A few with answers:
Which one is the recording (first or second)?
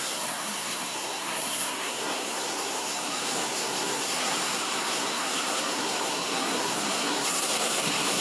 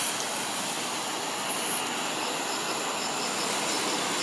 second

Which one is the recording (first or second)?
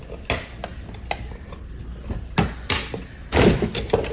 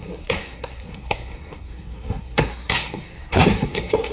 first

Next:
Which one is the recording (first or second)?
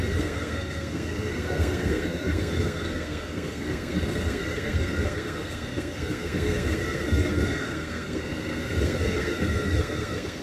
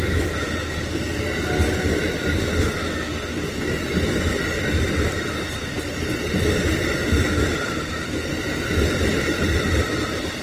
second